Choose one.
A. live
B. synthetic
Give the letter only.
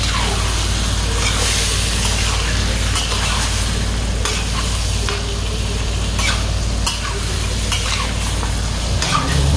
A